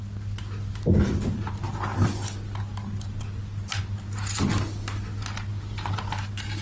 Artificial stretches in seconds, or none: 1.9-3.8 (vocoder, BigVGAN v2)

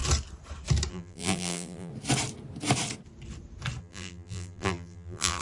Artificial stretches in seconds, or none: 0.9-1.9 (vocoder, BigVGAN v2); 3.8-5.4